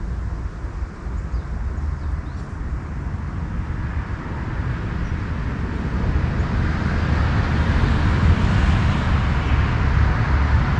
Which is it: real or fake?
real